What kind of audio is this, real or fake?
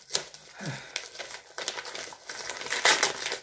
real